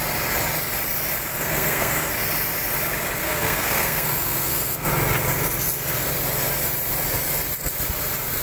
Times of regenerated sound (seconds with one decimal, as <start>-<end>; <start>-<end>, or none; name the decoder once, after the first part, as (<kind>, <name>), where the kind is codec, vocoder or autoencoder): 1.3-2.1 (codec, SNAC); 3.2-4.9